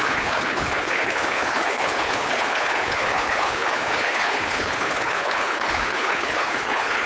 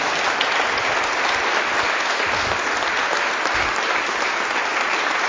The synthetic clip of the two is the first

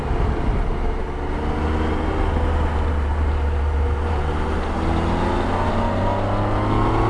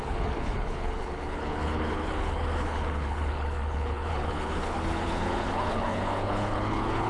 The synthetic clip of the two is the second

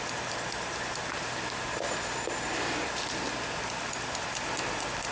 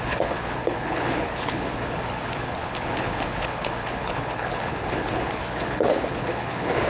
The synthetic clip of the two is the second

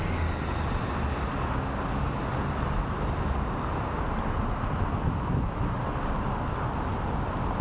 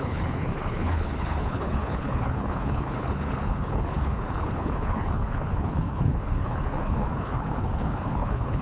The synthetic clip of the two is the second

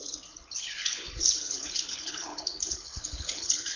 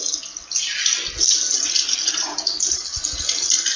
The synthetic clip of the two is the first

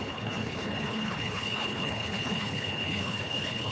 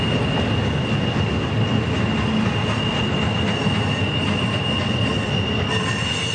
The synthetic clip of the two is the first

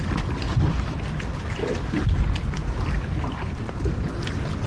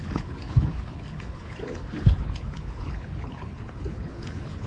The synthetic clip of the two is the second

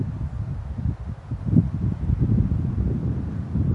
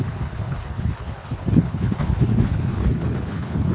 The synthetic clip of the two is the second